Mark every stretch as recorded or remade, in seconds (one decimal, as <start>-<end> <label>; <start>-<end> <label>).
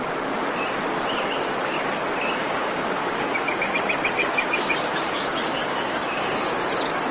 0.0-2.4 recorded; 2.4-3.7 remade; 3.7-4.2 recorded; 4.2-6.5 remade; 6.5-7.1 recorded